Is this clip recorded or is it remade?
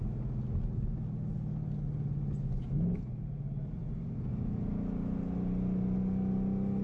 recorded